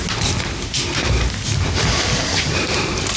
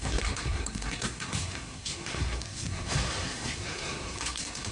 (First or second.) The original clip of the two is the first